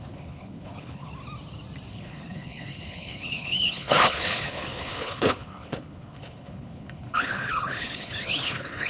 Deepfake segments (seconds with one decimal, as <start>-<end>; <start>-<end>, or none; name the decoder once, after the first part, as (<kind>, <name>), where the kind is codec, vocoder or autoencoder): 0.0-1.1 (codec, HILCodec); 1.9-8.9

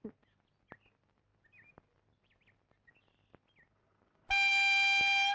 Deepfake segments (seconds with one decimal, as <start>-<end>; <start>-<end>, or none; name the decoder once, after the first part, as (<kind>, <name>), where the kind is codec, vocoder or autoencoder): none

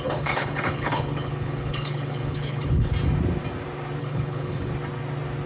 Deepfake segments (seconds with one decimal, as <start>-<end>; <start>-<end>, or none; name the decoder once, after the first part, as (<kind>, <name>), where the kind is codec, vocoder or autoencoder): 0.0-2.9 (codec, HILCodec); 4.0-4.7

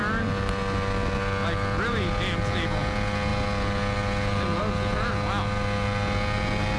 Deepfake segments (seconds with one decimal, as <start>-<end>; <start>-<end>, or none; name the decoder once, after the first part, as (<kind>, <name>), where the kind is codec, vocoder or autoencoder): none

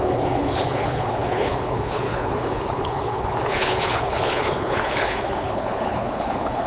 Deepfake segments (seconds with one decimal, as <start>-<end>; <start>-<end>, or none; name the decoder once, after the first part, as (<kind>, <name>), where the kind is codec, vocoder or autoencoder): 0.0-6.7 (codec, HILCodec)

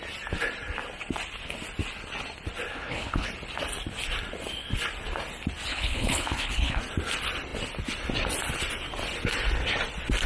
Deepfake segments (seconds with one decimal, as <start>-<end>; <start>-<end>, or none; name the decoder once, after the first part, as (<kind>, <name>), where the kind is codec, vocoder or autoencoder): 2.7-3.3 (codec, HILCodec); 5.7-6.8

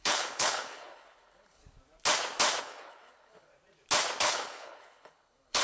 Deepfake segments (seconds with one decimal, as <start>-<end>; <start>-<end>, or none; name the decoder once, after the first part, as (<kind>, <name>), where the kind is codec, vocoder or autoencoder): 0.0-1.6 (codec, HILCodec); 2.6-3.5; 4.2-5.6